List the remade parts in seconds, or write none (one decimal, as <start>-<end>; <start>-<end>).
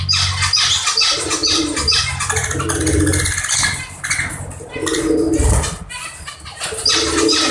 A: none